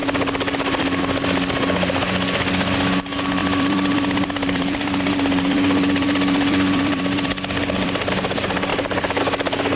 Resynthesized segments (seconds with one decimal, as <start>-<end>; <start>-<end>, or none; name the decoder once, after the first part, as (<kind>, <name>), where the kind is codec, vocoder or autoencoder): 3.4-8.1 (vocoder, BigVGAN v2); 8.7-9.2